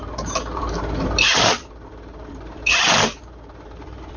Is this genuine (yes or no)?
no